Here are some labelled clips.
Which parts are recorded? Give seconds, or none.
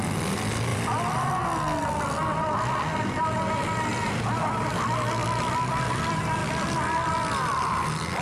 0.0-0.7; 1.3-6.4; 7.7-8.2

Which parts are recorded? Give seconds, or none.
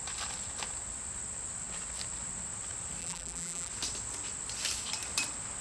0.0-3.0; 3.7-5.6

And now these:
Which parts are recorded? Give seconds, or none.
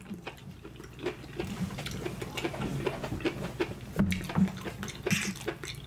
2.7-5.9